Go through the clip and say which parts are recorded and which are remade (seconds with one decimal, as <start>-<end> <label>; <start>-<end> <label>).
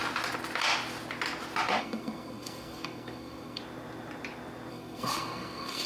0.0-1.8 recorded; 1.8-3.6 remade; 3.6-4.7 recorded; 4.7-5.9 remade